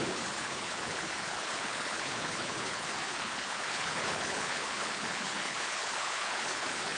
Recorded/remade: remade